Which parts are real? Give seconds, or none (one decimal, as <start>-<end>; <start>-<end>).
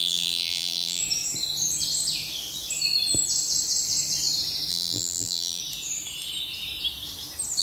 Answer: 1.0-4.7; 5.6-7.6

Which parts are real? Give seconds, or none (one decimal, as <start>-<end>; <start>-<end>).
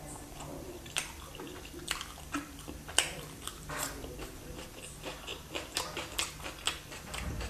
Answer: none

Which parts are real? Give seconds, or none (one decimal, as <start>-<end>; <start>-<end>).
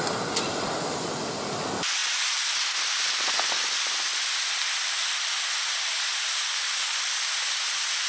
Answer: 0.0-8.1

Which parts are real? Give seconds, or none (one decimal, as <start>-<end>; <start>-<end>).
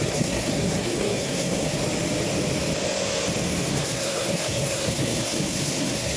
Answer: 1.8-3.7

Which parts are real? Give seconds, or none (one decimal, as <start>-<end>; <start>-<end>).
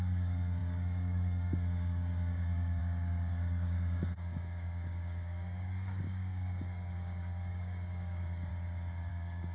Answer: 8.5-9.1